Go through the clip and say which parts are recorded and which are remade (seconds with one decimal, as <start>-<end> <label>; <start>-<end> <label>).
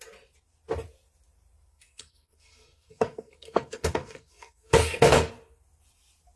0.0-1.7 recorded; 1.7-5.3 remade; 5.3-6.4 recorded